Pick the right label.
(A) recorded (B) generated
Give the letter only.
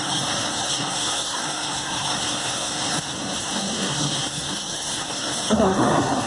B